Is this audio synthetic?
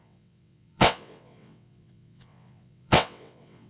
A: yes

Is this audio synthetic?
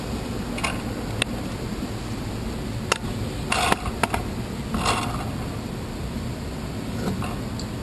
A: no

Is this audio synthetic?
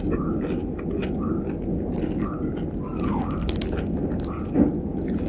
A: no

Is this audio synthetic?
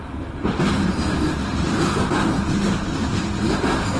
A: no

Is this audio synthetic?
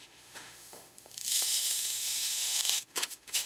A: yes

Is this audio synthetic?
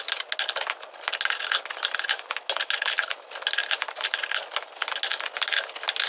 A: no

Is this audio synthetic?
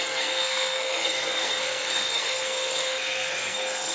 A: yes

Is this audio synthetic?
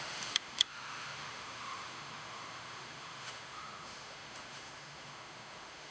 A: yes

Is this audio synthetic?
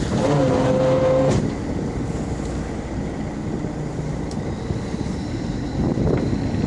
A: no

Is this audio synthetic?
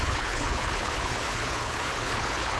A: yes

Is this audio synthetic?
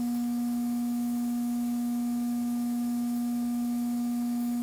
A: yes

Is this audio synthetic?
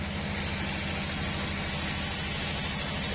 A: no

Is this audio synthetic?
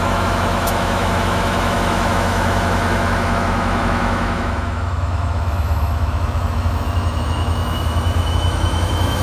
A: yes